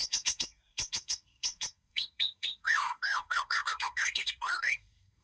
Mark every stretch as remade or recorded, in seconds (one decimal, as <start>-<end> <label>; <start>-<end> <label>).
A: 0.0-5.2 remade